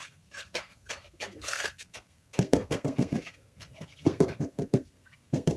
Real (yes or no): no